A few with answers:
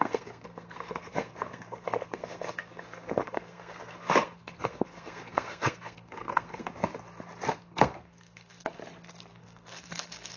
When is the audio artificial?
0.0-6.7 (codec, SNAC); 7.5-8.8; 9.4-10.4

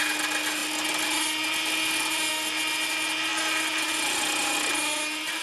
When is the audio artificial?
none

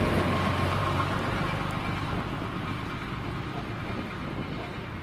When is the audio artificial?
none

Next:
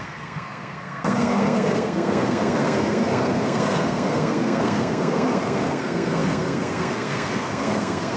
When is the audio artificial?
0.0-8.2 (codec, SNAC)

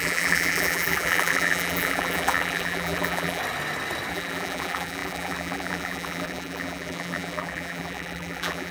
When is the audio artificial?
0.0-3.4 (vocoder, BigVGAN v2); 4.1-8.7

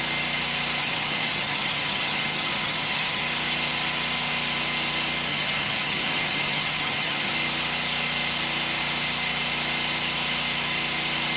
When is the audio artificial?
0.8-3.2 (vocoder, HiFi-GAN); 5.3-7.3

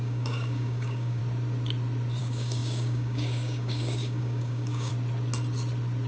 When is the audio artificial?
0.0-1.2 (codec, DAC); 2.2-4.9

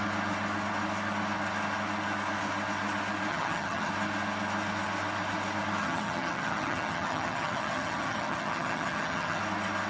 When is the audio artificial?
3.3-3.9 (vocoder, HiFi-GAN); 5.8-9.4